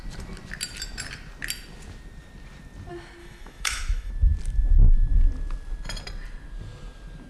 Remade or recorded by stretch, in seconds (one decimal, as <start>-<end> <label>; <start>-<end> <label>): 0.0-3.2 recorded; 3.2-4.1 remade; 4.1-7.3 recorded